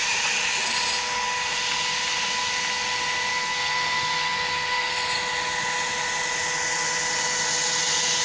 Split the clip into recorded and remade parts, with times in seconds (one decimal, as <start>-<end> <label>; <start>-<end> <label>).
0.0-3.3 recorded; 3.3-4.9 remade; 4.9-8.2 recorded